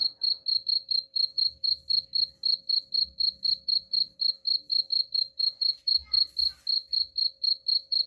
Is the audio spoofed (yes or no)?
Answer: no